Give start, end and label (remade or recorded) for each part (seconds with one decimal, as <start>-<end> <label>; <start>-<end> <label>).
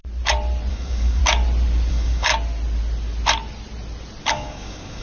0.0-0.7 recorded; 0.7-1.2 remade; 1.2-1.9 recorded; 1.9-2.3 remade; 2.3-4.3 recorded; 4.3-5.0 remade